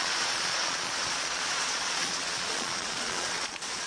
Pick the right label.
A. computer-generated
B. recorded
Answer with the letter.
A